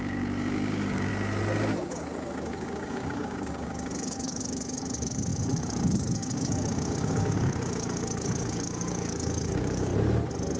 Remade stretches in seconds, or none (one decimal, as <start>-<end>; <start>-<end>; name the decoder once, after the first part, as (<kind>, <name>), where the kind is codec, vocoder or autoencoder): 0.0-1.1 (codec, DAC); 1.8-9.9